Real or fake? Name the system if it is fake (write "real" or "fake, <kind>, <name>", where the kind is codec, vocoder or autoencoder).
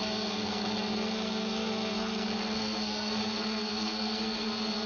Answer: fake, codec, SNAC